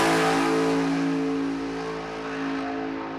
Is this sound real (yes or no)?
yes